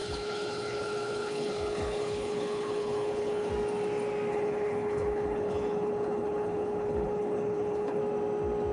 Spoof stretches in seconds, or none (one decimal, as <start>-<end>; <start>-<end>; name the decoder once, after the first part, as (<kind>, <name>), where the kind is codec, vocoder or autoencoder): 0.0-3.5 (codec, HILCodec); 4.3-8.0